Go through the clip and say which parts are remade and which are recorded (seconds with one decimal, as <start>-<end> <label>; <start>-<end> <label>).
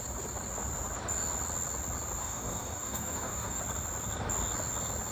0.0-2.2 recorded; 2.2-3.6 remade; 3.6-5.1 recorded